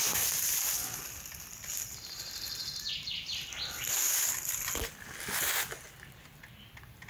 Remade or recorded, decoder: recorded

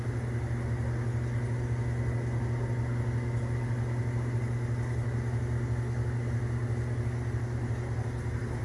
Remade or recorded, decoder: recorded